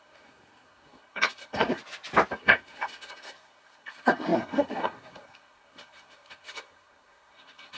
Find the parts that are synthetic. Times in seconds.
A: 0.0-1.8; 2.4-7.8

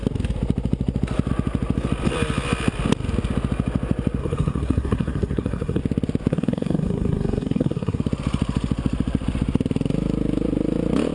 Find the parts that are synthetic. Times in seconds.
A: 4.2-5.8; 6.3-8.0

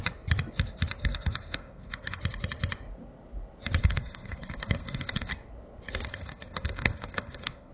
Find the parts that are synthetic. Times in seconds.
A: 1.0-2.2; 3.8-5.3; 6.1-7.7

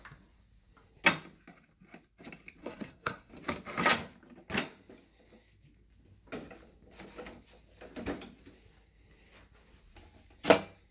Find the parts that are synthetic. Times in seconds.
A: 2.6-3.3

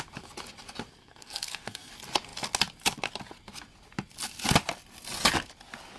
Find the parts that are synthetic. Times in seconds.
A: 0.9-1.9

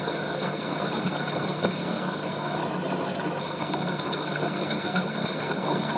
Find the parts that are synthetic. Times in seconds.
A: 0.0-2.6; 3.4-6.0

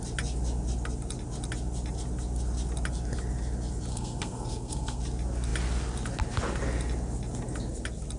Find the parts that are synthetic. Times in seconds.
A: 3.9-5.0